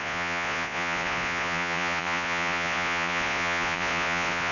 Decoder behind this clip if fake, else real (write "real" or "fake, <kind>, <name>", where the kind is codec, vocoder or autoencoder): fake, vocoder, Vocos